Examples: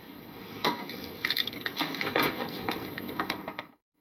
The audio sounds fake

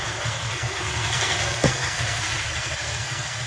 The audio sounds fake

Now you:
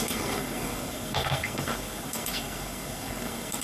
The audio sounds fake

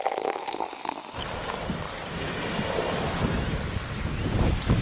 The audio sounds real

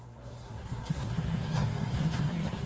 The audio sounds fake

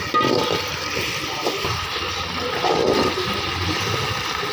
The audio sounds real